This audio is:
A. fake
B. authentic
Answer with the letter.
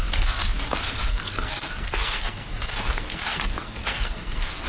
A